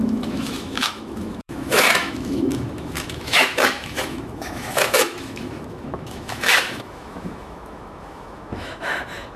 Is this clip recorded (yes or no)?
no